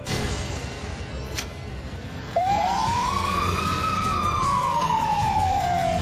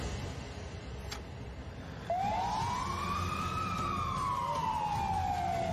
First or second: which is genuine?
second